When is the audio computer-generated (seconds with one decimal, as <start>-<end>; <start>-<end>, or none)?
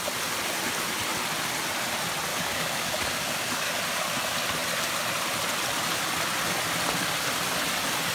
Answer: 2.3-3.8